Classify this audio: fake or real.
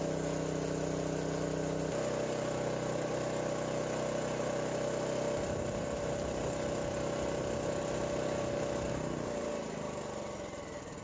real